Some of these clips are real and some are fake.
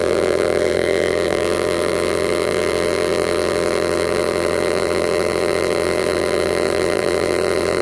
fake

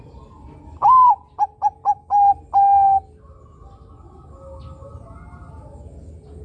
real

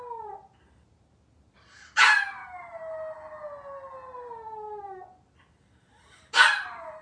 real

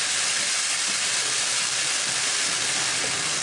fake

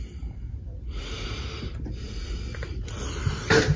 fake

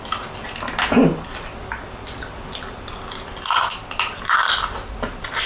real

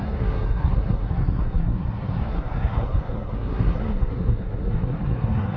fake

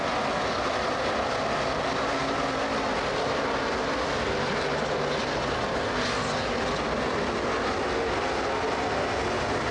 real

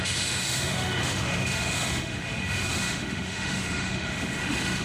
fake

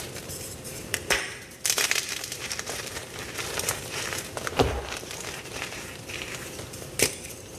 fake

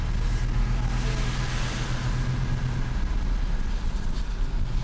real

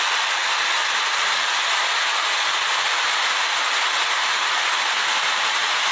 real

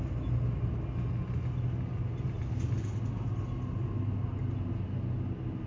real